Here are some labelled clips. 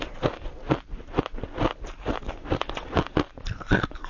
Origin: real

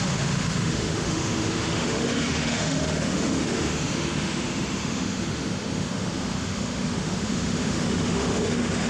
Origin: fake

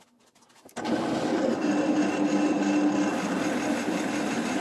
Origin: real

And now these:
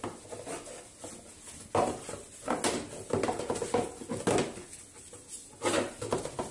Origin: real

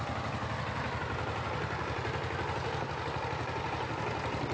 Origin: real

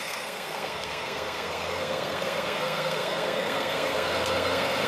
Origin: fake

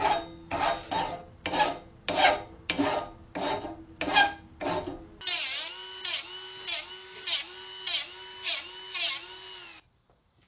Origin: real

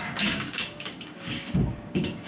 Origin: fake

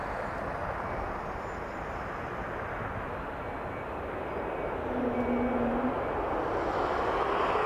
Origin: real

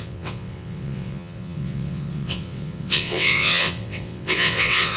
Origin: fake